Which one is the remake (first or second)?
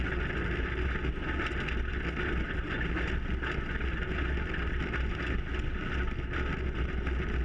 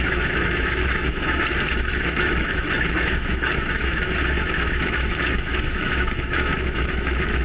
second